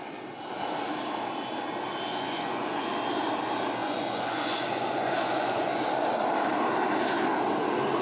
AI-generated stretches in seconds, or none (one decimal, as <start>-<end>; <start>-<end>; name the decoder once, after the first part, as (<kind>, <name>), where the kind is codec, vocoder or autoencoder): 2.1-2.9 (vocoder, Vocos); 3.8-5.8